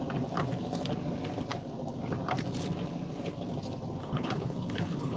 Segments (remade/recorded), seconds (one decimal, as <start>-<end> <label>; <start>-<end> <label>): 0.0-4.0 recorded; 4.0-5.2 remade